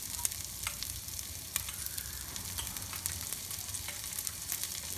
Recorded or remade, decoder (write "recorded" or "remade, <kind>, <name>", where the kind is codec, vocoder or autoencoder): recorded